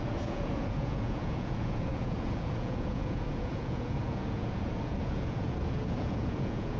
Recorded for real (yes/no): no